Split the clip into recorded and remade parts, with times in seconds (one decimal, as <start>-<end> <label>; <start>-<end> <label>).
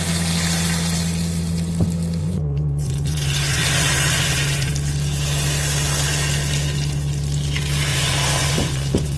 0.0-2.2 recorded; 2.2-4.7 remade; 4.7-7.9 recorded; 7.9-9.2 remade